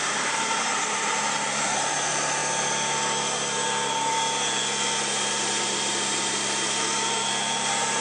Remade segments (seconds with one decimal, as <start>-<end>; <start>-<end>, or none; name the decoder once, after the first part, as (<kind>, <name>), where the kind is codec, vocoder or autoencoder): 0.0-2.4 (vocoder, BigVGAN v2); 5.3-8.0